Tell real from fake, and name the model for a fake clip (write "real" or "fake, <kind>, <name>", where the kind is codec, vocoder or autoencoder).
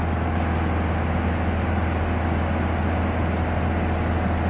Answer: real